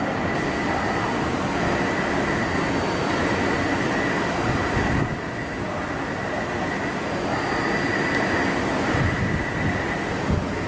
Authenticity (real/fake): real